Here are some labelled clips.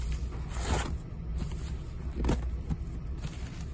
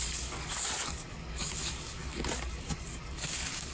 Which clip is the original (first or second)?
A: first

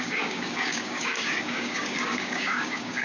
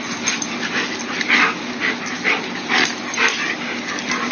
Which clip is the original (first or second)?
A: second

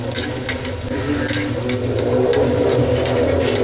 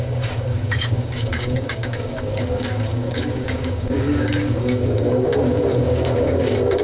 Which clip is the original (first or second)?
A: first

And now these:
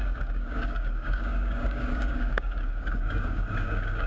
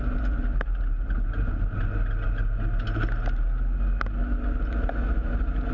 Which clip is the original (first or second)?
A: second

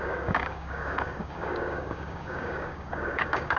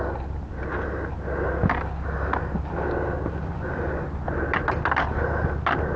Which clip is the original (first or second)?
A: second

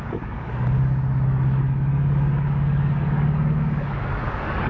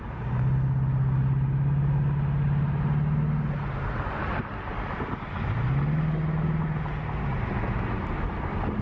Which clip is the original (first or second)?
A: second